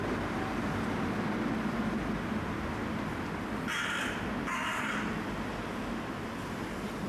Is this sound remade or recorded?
recorded